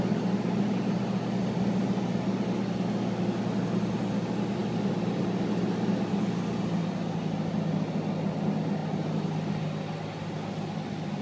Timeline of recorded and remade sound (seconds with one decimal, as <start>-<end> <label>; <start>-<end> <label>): 0.0-11.2 recorded